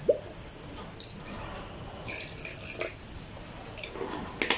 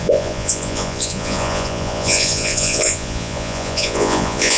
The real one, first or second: first